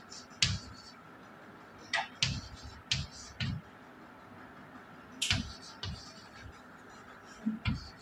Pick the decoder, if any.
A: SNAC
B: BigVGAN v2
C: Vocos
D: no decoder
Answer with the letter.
D